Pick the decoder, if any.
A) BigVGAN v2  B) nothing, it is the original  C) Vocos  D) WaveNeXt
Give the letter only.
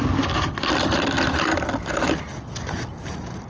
B